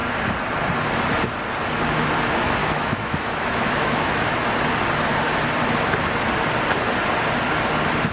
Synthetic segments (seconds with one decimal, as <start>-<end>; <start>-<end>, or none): 2.6-4.5